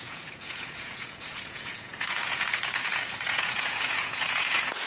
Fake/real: fake